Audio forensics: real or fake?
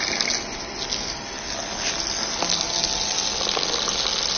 real